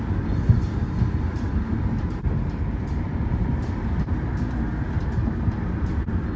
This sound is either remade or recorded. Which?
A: recorded